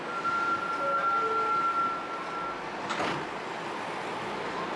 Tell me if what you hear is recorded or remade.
recorded